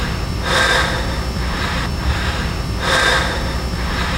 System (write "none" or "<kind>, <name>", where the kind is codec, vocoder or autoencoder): vocoder, BigVGAN v2